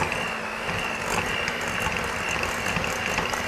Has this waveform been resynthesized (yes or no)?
no